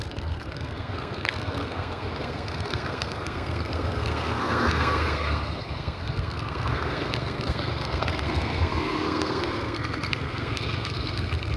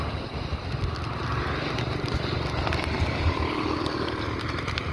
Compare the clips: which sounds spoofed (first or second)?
first